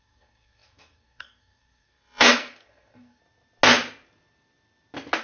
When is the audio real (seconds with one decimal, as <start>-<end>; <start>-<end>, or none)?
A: 3.2-5.2